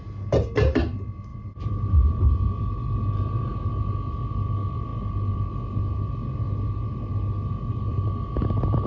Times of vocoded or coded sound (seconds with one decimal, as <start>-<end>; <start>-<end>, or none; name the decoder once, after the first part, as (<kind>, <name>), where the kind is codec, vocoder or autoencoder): 1.3-2.7 (vocoder, BigVGAN v2)